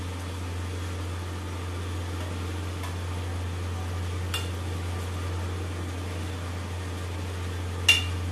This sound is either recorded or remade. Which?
recorded